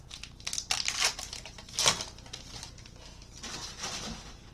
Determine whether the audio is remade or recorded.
recorded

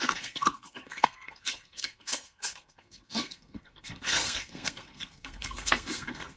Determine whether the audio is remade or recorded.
remade